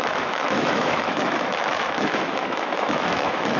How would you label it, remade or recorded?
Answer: remade